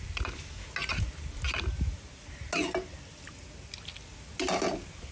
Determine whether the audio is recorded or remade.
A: recorded